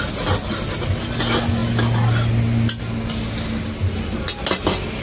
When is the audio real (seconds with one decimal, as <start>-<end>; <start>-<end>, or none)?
0.0-5.0